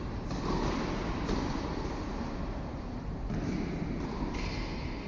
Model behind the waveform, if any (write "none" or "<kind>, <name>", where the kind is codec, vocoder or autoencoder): none